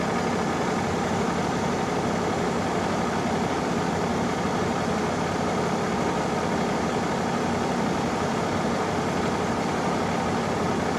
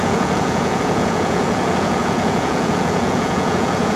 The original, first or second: first